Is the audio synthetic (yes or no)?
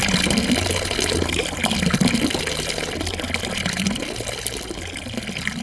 no